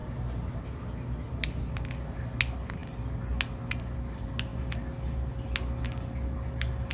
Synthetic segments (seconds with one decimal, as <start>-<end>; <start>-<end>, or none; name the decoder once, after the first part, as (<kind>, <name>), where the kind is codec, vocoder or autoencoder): none